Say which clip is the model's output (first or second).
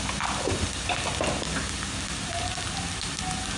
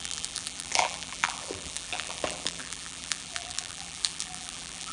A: second